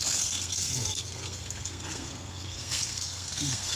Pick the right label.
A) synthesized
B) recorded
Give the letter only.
A